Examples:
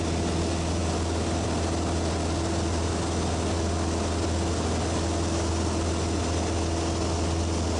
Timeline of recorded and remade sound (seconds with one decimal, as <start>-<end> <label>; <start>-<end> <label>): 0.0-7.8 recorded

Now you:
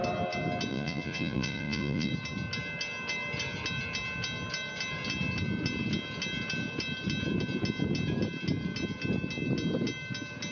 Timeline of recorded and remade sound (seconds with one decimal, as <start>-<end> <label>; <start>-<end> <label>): 0.0-0.7 recorded; 0.7-2.1 remade; 2.1-10.5 recorded

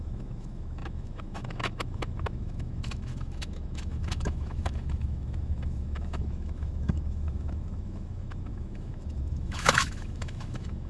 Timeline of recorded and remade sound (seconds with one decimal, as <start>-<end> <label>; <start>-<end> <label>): 0.0-10.9 remade

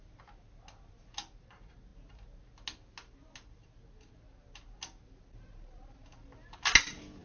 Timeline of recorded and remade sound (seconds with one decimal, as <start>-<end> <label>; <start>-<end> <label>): 0.0-7.2 recorded

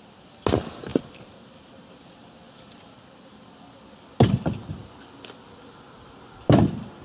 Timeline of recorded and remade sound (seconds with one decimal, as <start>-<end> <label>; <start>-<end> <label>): 0.0-7.0 recorded

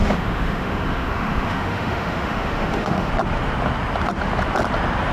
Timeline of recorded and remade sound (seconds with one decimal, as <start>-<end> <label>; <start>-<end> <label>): 0.0-3.1 remade; 3.1-5.1 recorded